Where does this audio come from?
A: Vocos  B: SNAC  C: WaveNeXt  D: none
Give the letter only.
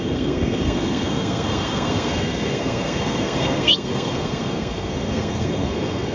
B